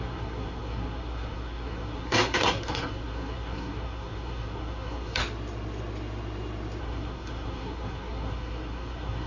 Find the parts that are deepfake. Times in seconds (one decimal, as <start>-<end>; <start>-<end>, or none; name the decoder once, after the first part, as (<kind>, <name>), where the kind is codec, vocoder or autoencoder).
0.0-5.2 (codec, SNAC); 6.8-9.3